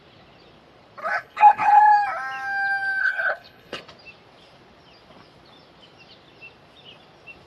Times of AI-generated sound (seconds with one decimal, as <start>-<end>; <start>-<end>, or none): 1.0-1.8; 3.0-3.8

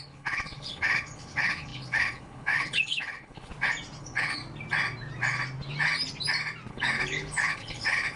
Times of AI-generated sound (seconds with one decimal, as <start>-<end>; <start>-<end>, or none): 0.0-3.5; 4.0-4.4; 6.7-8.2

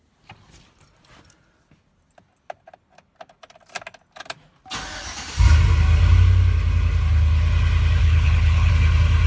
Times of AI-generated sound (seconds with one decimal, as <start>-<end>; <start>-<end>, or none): 8.0-8.7